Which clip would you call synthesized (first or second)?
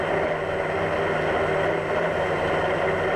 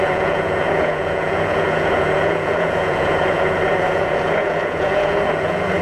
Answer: second